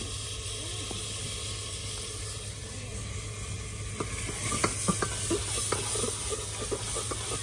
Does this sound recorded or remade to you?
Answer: recorded